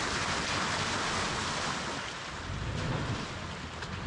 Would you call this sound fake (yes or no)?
no